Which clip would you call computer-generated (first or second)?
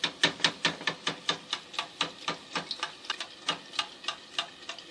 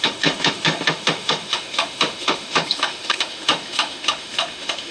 second